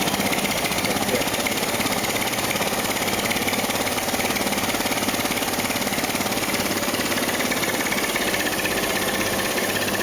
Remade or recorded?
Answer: recorded